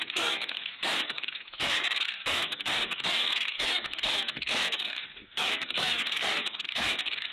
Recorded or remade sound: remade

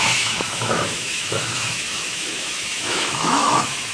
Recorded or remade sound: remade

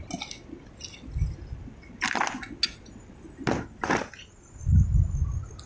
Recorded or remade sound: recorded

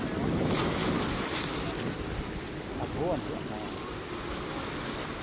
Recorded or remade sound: recorded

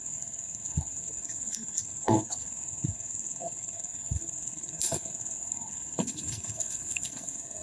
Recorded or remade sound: remade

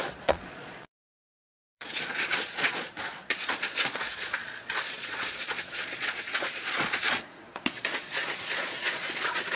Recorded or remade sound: remade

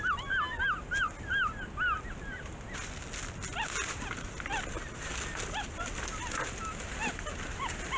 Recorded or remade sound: recorded